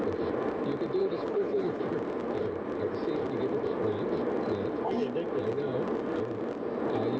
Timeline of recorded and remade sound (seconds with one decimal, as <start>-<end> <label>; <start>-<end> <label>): 0.0-1.0 recorded; 1.0-1.8 remade; 1.8-7.2 recorded